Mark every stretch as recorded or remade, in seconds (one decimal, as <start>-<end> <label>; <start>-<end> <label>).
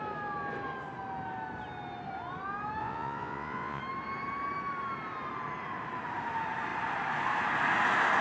0.0-2.8 recorded; 2.8-3.8 remade; 3.8-8.2 recorded